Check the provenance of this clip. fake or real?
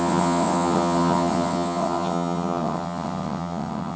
fake